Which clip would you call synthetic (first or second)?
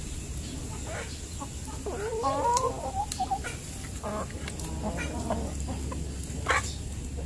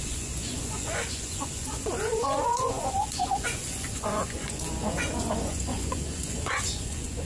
second